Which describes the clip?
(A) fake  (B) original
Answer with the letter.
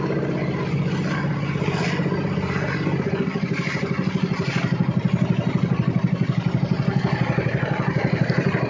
B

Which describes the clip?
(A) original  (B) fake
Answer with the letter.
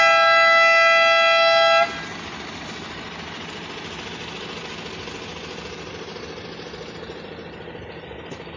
A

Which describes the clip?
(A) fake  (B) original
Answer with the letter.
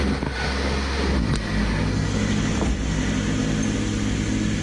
B